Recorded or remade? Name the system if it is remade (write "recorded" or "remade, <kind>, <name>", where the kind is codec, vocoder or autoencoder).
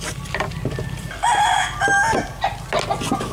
recorded